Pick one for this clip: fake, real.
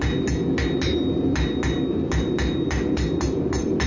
real